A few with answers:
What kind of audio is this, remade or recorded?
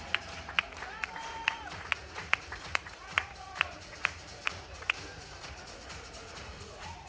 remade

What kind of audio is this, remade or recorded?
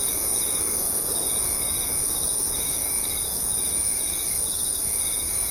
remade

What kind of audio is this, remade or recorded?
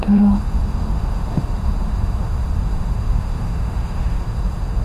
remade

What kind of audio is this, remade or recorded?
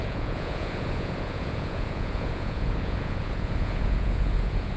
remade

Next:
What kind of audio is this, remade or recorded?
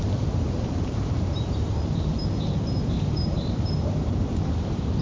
remade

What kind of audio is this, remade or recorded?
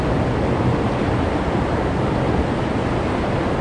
recorded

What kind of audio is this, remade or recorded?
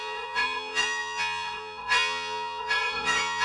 remade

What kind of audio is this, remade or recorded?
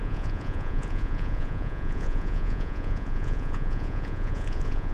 remade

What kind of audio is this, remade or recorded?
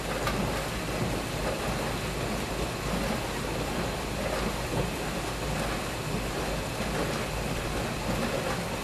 recorded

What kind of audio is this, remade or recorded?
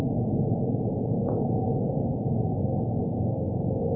recorded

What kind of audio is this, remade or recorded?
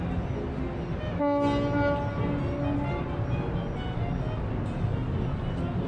recorded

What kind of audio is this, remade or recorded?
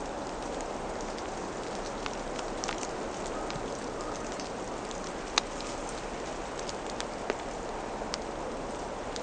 recorded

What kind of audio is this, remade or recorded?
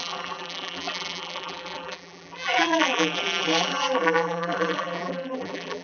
remade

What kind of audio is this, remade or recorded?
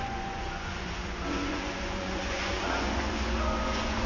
remade